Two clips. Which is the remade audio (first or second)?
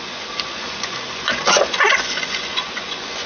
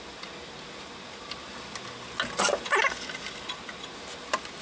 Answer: first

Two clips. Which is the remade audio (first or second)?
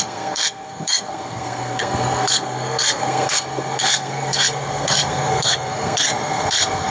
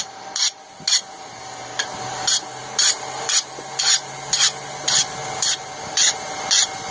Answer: first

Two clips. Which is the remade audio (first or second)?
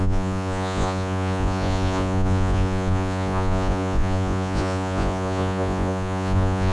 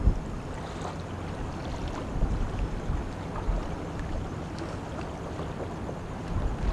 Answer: first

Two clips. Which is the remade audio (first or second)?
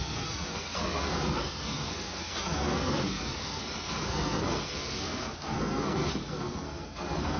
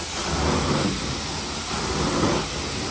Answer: first